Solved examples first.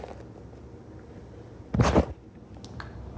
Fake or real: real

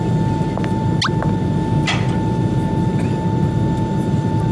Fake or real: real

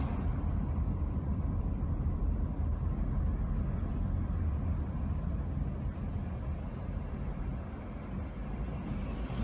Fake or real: real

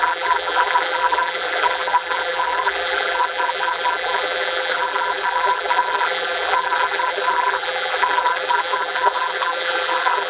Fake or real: fake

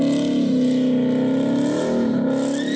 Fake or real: real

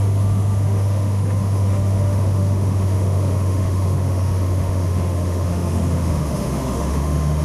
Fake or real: fake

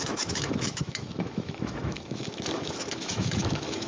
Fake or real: fake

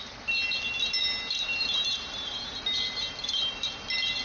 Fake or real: real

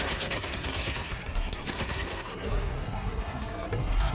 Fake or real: fake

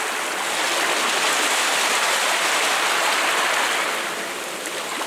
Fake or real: real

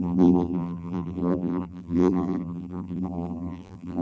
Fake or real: fake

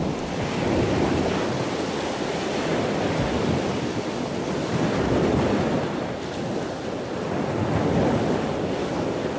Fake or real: real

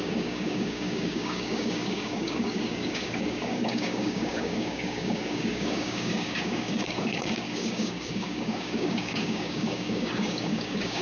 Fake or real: fake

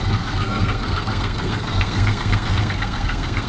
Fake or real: fake